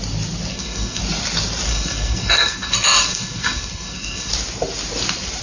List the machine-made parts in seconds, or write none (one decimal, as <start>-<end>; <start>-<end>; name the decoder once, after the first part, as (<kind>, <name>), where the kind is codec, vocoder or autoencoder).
0.5-1.0 (codec, SNAC); 1.7-4.3